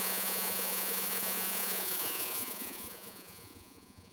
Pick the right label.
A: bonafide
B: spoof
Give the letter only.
B